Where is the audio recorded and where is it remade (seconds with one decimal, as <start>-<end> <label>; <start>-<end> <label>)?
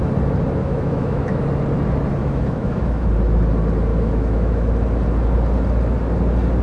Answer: 0.0-0.6 recorded; 0.6-1.4 remade; 1.4-2.2 recorded; 2.2-3.1 remade; 3.1-3.9 recorded; 3.9-4.7 remade; 4.7-6.6 recorded